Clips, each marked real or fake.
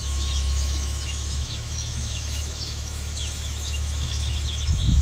fake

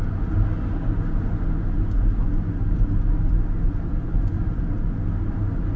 real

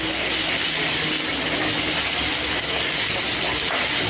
real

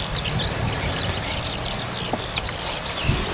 real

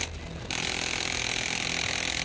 real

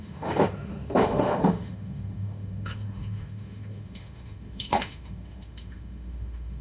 fake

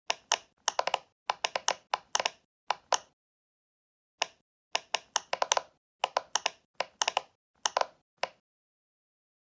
real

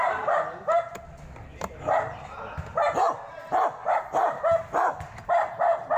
real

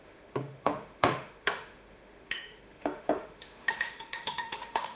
fake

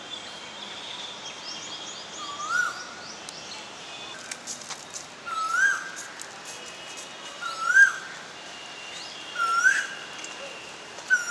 real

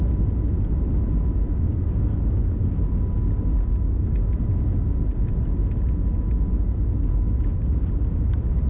real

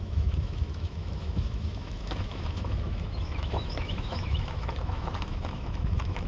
fake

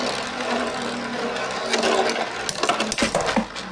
real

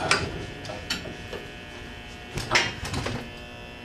real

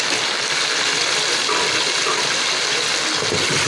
real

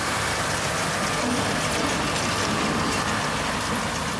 real